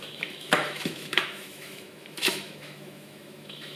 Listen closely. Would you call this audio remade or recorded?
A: remade